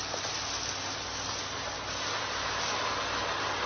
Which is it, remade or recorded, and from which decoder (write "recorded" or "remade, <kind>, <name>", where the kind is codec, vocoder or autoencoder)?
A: recorded